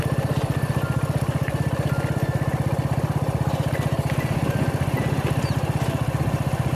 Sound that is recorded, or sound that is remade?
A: recorded